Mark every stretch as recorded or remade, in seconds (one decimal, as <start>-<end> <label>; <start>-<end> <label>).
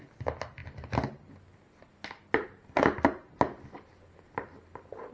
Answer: 0.0-5.1 recorded